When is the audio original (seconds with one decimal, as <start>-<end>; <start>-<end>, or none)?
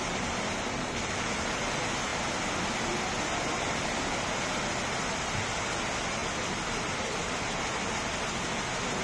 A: 0.0-9.0